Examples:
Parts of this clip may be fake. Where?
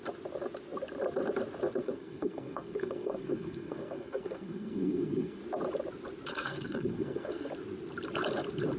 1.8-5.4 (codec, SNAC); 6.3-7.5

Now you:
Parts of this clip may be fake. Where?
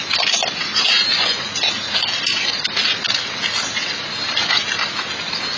1.2-1.8 (vocoder, Vocos)